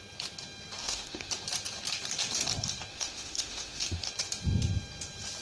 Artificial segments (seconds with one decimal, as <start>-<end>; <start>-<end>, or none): 0.8-1.3; 2.9-4.1